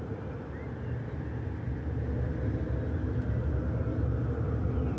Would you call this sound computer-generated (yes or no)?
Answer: no